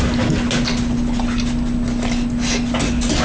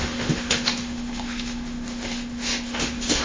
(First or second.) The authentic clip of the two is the first